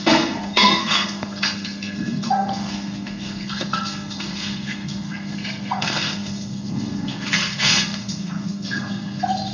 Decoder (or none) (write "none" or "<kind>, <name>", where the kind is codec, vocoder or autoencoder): codec, SNAC